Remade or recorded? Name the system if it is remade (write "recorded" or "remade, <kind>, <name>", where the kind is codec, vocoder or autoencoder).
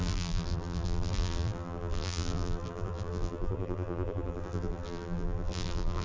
remade, vocoder, BigVGAN v2